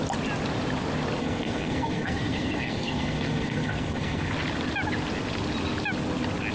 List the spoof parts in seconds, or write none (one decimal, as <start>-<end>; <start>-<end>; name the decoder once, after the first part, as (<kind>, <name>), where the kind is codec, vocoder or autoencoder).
1.2-4.3 (codec, SNAC)

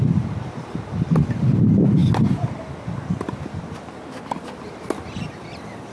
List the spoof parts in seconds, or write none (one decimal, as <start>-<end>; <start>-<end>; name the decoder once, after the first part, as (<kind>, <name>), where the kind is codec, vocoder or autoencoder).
none

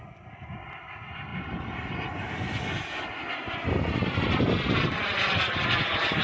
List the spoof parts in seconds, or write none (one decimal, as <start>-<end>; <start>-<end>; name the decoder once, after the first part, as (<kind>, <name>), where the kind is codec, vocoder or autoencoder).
none

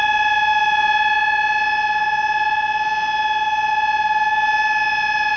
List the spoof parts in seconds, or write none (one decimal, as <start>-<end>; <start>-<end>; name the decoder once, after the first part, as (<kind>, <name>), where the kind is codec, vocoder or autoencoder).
none